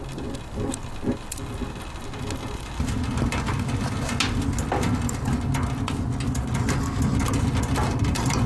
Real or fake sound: real